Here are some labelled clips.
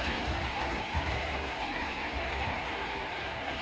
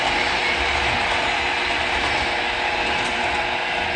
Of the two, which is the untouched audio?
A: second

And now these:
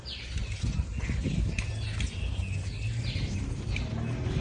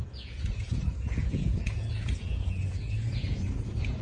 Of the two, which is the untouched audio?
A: first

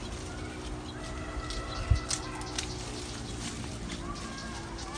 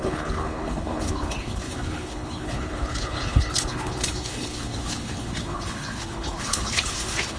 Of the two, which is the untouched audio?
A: first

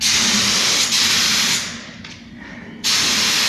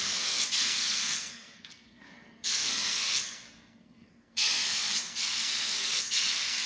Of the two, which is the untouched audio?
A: first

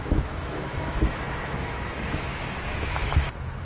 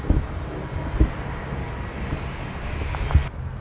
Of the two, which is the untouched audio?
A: second